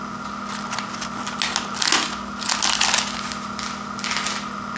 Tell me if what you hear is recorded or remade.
recorded